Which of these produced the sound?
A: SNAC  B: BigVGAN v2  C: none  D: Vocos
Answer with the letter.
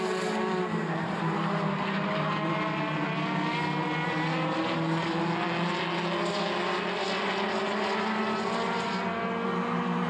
C